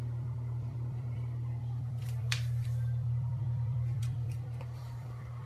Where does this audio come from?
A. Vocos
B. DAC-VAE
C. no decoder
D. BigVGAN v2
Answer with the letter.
D